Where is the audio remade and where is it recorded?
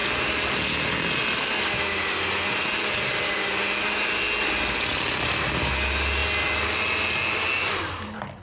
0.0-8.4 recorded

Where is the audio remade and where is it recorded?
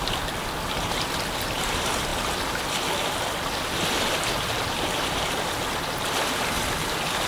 0.0-2.1 remade; 2.1-4.4 recorded; 4.4-7.3 remade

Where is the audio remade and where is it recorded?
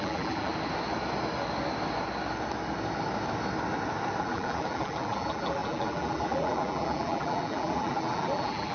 0.0-0.5 remade; 0.5-4.2 recorded; 4.2-8.7 remade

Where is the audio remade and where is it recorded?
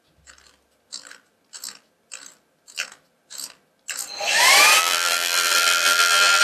0.0-4.8 recorded; 4.8-6.4 remade